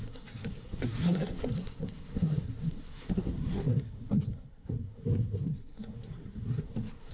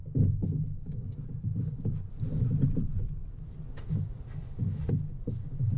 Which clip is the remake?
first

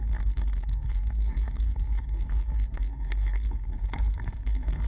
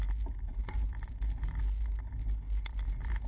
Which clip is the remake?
first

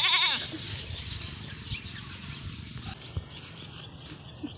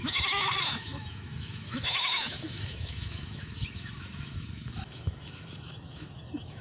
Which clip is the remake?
second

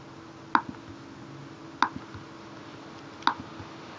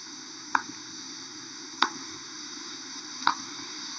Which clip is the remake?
second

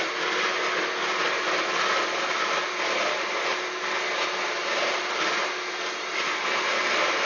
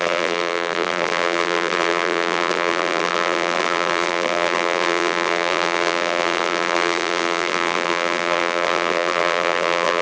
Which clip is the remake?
second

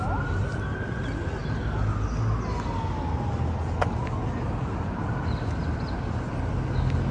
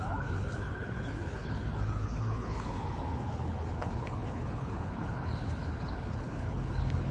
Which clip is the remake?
second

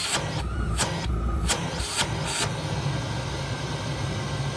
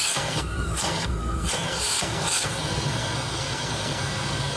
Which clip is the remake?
second